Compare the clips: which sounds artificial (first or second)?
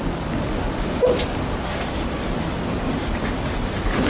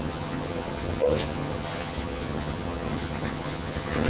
second